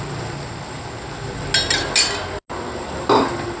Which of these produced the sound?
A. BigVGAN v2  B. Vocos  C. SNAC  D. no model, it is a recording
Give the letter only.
D